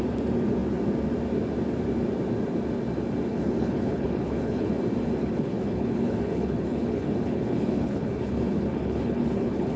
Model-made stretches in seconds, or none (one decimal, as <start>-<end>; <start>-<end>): 3.3-4.7; 5.2-9.8